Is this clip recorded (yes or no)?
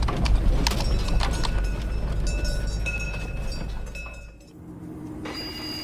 yes